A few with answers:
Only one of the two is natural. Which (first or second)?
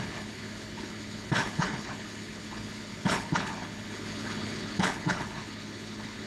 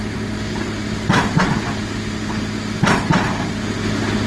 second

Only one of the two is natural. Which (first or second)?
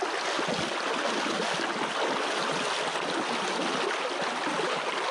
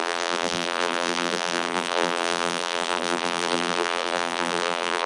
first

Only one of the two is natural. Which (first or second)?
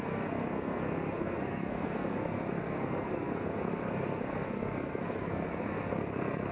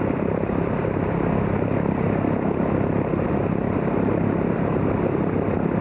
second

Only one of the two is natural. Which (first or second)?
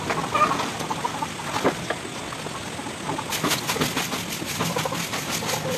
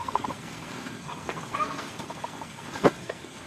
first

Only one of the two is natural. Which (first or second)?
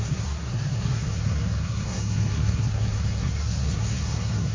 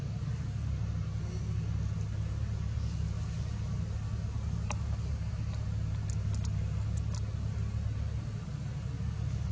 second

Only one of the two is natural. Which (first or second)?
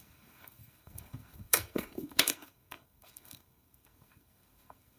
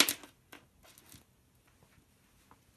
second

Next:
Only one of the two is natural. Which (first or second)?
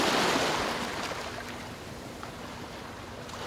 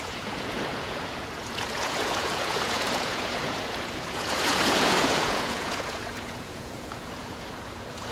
first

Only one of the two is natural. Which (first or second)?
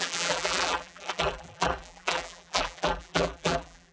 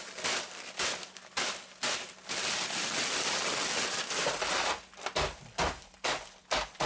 second